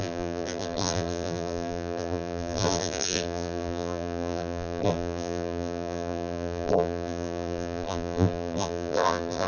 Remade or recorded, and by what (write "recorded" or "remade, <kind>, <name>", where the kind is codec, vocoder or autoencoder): remade, vocoder, BigVGAN v2